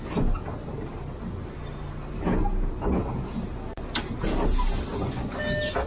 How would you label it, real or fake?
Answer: real